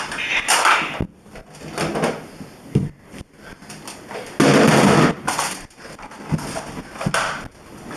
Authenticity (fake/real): real